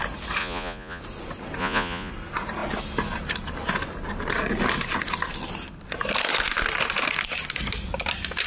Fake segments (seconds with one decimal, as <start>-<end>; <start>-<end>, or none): 0.4-1.0; 1.6-2.1